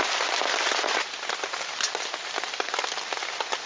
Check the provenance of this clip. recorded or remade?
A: recorded